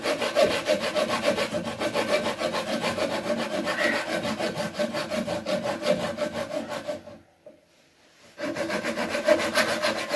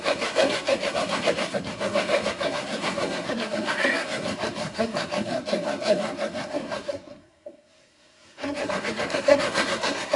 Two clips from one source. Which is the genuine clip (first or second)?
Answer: first